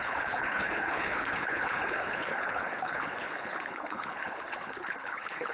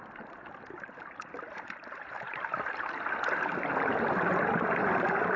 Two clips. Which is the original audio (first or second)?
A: second